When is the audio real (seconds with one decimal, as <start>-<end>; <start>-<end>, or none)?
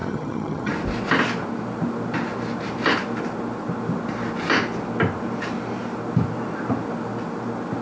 0.7-7.8